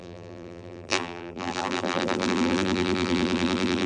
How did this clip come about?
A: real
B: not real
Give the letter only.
B